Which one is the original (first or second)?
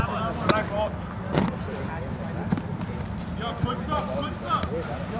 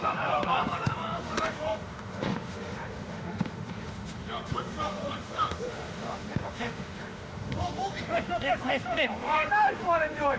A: first